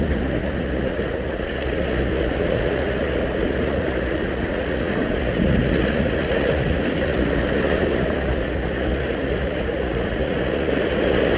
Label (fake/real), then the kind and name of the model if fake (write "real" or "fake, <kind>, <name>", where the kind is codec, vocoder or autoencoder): fake, vocoder, Vocos